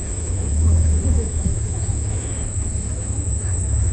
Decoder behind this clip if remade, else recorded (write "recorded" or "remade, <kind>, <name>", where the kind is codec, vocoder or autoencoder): remade, autoencoder, DAC-VAE